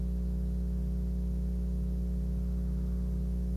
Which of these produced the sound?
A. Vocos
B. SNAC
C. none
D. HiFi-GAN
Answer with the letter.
C